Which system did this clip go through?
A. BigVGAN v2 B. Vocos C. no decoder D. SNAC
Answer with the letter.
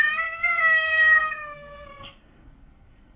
D